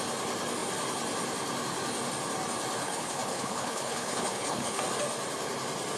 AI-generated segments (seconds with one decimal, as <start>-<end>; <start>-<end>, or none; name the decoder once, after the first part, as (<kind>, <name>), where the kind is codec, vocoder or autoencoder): 2.8-4.8 (codec, HILCodec)